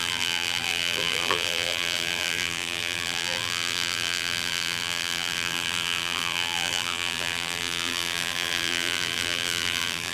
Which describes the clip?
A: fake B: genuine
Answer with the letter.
A